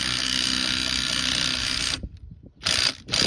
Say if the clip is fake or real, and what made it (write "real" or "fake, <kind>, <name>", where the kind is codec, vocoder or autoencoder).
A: real